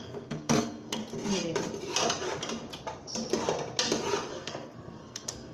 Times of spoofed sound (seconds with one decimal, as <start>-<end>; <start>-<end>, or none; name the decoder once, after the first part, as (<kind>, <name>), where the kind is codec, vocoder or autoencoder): 0.0-1.0 (codec, SNAC); 4.3-5.5